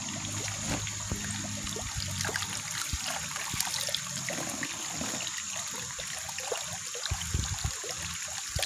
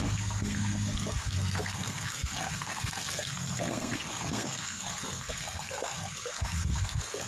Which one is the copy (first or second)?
second